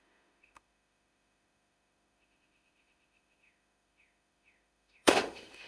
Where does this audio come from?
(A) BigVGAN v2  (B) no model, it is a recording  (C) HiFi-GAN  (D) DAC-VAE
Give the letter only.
D